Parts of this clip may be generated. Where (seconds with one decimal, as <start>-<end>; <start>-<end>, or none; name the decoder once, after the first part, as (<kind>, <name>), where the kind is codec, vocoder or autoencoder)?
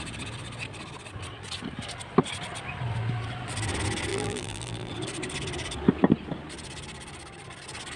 4.1-4.9 (vocoder, BigVGAN v2)